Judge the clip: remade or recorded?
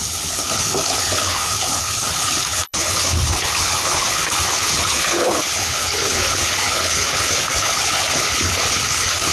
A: remade